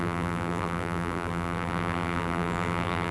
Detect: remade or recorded remade